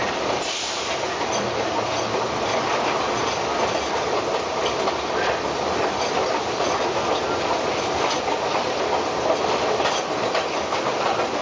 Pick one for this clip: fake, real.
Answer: real